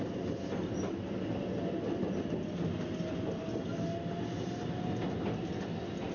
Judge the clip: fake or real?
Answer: real